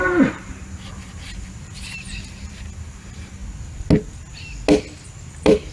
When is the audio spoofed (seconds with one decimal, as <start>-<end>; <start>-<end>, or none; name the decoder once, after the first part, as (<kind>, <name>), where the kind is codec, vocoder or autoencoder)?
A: 0.0-3.4 (vocoder, BigVGAN v2); 5.3-5.7